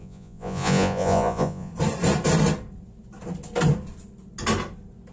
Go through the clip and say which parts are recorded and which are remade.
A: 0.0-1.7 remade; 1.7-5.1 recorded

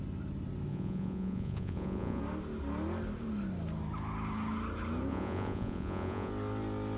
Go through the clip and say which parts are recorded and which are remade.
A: 0.0-0.7 recorded; 0.7-2.2 remade; 2.2-5.1 recorded; 5.1-6.3 remade; 6.3-7.0 recorded